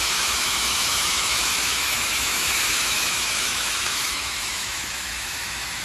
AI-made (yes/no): yes